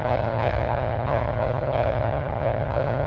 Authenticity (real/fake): fake